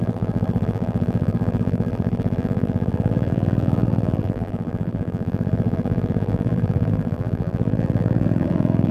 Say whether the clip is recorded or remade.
remade